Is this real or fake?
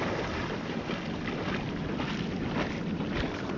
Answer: real